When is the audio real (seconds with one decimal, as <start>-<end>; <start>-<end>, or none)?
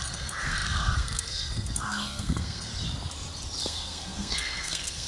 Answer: 2.7-3.6